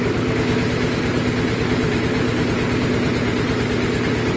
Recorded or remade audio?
recorded